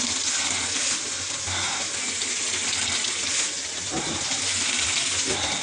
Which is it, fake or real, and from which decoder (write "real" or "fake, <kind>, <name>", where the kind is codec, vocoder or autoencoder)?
real